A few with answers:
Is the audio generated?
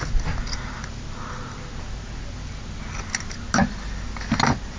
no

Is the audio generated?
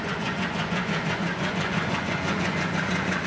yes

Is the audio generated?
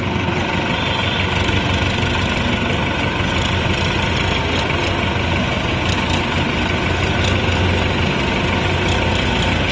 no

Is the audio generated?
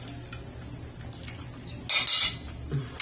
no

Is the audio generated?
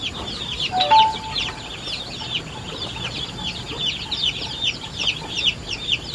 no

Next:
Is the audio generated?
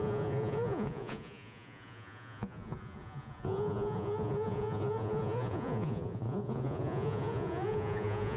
yes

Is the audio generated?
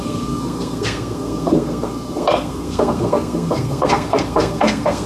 yes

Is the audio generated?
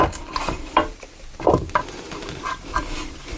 no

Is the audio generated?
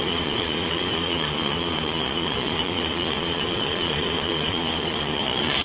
yes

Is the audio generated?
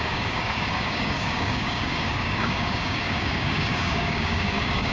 yes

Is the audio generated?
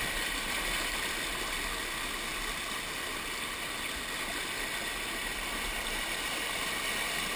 no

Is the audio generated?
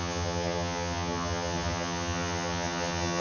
yes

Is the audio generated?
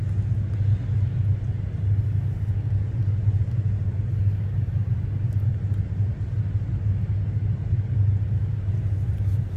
no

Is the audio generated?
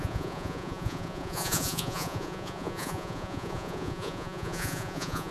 yes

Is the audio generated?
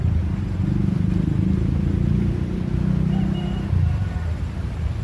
no